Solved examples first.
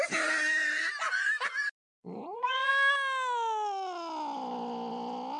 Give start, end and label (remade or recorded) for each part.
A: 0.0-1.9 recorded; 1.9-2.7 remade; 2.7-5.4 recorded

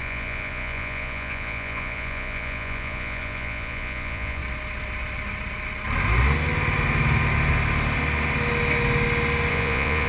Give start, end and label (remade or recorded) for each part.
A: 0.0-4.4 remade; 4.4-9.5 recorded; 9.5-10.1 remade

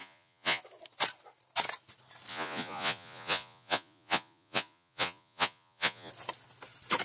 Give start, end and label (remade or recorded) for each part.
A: 0.0-0.6 remade; 0.6-2.3 recorded; 2.3-6.1 remade; 6.1-7.0 recorded

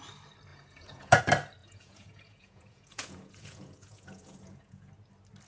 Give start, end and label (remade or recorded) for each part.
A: 0.0-0.5 recorded; 0.5-1.2 remade; 1.2-1.6 recorded; 1.6-4.9 remade; 4.9-5.5 recorded